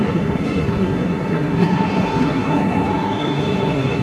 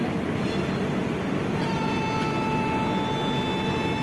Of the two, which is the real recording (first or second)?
second